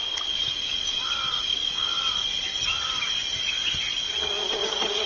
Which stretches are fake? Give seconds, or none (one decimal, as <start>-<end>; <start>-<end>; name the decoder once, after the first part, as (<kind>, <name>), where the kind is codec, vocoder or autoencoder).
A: 1.5-1.9 (codec, DAC); 4.6-5.1

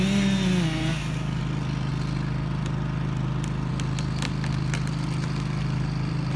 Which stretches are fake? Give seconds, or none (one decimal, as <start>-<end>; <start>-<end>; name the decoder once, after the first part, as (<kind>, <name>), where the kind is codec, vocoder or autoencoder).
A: 0.9-1.4 (codec, DAC)

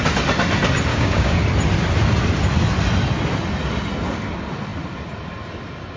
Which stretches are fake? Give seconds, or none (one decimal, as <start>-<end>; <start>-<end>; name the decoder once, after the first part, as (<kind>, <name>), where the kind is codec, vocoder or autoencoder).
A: 0.9-1.4 (codec, DAC)

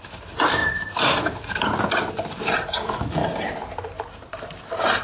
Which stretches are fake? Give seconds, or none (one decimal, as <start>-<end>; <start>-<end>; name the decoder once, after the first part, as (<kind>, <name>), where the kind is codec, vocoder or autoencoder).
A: none

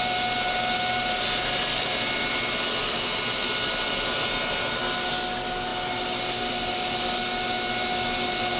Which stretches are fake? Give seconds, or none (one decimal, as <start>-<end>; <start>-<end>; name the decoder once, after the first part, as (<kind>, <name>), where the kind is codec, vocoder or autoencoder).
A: none